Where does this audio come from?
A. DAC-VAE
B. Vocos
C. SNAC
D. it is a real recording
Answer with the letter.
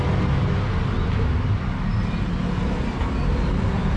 D